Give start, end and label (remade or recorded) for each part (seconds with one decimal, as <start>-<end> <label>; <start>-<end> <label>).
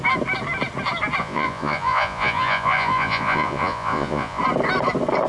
0.0-1.2 recorded; 1.2-4.4 remade; 4.4-5.3 recorded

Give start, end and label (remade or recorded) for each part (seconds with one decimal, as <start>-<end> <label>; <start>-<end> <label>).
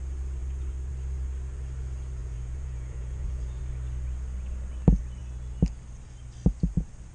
0.0-2.2 recorded; 2.2-3.6 remade; 3.6-7.1 recorded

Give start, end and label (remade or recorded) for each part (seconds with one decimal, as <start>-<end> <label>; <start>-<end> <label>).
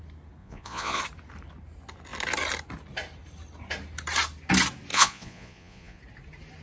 0.0-0.4 recorded; 0.4-1.0 remade; 1.0-4.9 recorded; 4.9-6.0 remade; 6.0-6.6 recorded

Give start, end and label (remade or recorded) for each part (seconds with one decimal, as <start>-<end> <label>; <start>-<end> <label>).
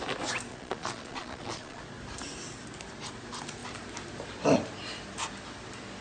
0.0-0.5 recorded; 0.5-1.8 remade; 1.8-6.0 recorded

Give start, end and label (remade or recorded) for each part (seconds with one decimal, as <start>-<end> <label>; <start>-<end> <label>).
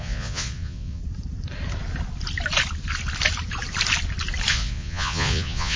0.0-1.0 remade; 1.0-4.5 recorded; 4.5-5.8 remade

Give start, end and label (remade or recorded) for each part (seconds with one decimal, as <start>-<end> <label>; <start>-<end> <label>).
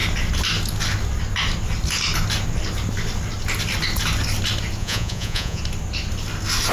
0.0-4.8 recorded; 4.8-5.6 remade; 5.6-6.7 recorded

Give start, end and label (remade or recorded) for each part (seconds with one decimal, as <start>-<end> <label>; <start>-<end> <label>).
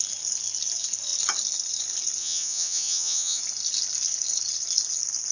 0.0-2.2 recorded; 2.2-3.4 remade; 3.4-5.3 recorded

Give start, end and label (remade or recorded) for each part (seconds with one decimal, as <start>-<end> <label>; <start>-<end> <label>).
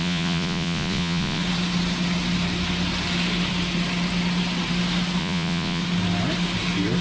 0.0-1.4 remade; 1.4-5.2 recorded; 5.2-5.8 remade; 5.8-7.0 recorded